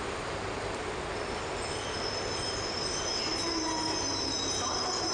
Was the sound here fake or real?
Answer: real